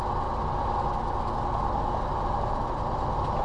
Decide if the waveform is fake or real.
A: real